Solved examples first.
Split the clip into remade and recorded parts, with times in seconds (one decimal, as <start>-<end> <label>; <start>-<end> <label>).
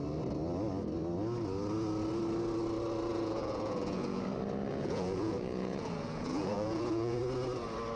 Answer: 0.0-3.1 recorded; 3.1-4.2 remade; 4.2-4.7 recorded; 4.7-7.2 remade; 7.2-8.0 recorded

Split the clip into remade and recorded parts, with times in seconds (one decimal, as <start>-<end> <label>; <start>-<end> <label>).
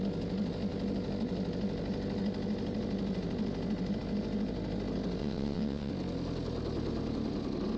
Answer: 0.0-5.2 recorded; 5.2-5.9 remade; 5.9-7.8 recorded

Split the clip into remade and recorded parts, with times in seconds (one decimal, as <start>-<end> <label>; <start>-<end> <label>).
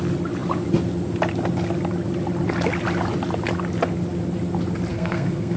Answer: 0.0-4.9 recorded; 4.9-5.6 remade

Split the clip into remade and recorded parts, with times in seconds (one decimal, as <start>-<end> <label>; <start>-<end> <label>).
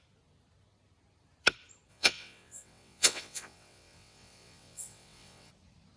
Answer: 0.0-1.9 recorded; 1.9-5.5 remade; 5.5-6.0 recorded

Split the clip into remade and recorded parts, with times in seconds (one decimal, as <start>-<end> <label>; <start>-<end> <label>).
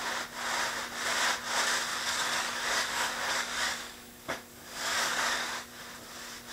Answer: 0.0-1.9 recorded; 1.9-5.8 remade; 5.8-6.5 recorded